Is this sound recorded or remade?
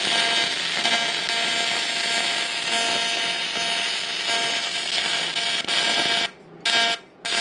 recorded